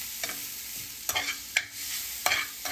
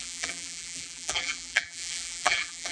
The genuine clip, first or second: first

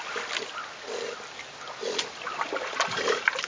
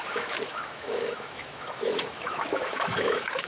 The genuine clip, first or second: first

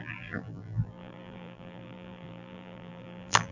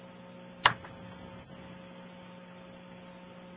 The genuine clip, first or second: second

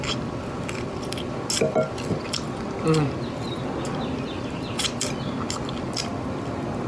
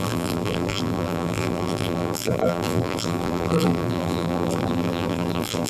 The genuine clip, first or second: first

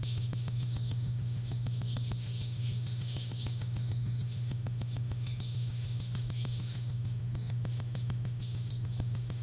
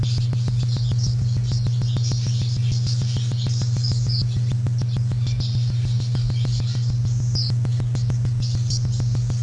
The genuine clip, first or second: second